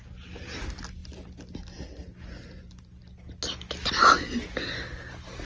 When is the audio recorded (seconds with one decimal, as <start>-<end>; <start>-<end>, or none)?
0.0-5.4